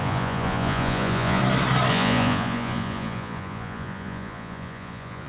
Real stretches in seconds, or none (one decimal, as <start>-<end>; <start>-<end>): 1.4-1.9